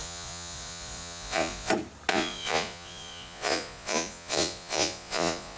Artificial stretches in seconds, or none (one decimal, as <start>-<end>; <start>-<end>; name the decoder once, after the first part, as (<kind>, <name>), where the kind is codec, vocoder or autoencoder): 0.0-1.7 (vocoder, Vocos); 2.1-5.6